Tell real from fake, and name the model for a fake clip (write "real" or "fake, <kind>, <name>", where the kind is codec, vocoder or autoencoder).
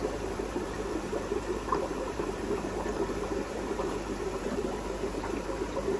fake, vocoder, BigVGAN v2